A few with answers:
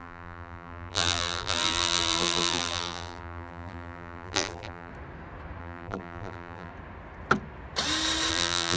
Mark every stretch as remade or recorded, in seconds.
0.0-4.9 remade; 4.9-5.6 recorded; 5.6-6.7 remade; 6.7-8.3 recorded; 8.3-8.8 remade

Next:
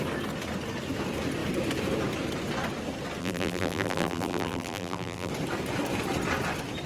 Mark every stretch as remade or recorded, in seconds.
0.0-3.2 recorded; 3.2-5.3 remade; 5.3-6.9 recorded

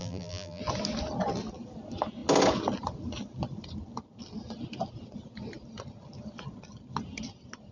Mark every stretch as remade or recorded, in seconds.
0.0-0.6 remade; 0.6-7.7 recorded

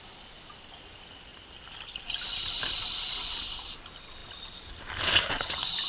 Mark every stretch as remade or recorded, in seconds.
0.0-1.3 recorded; 1.3-3.3 remade; 3.3-5.9 recorded